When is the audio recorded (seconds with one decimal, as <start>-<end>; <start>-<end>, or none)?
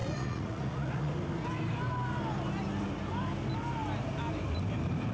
1.1-5.1